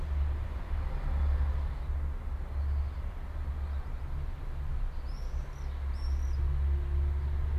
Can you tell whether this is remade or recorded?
recorded